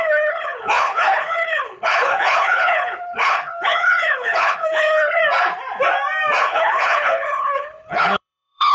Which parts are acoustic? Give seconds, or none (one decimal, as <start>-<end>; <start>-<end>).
5.2-6.4